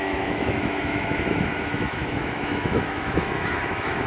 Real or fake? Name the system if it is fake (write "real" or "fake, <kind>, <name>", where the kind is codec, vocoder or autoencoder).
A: fake, autoencoder, DAC-VAE